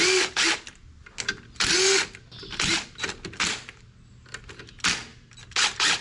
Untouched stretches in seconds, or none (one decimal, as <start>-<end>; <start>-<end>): 0.0-6.0